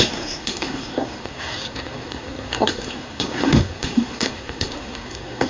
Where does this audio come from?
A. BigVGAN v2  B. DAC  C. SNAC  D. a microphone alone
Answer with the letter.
C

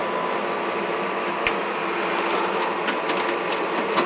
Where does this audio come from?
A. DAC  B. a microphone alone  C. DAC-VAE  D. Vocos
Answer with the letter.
B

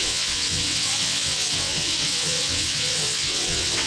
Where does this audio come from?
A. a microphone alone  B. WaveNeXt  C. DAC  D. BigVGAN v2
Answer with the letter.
B